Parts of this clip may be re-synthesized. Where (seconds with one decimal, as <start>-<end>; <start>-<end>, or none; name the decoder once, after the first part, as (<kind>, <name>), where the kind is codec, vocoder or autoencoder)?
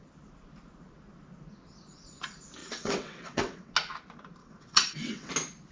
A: 2.6-3.7 (vocoder, WaveNeXt); 4.4-5.3